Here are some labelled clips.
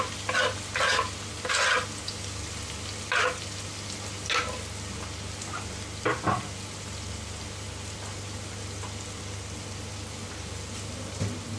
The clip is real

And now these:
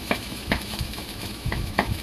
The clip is fake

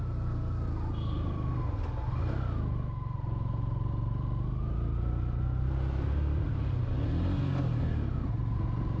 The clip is real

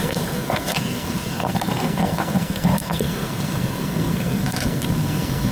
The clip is fake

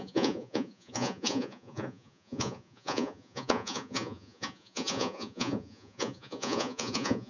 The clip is fake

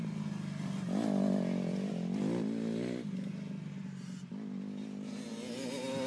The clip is real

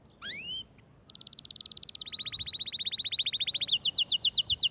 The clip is real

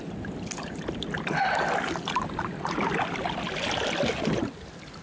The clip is real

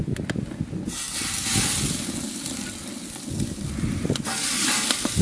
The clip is real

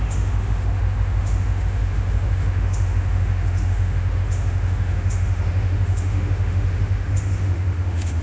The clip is fake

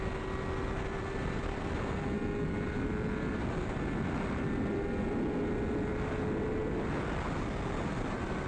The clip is real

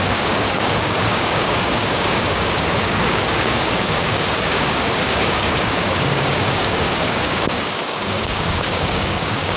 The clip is fake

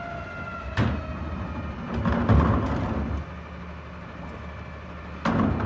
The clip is real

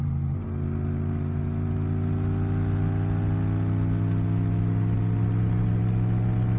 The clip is real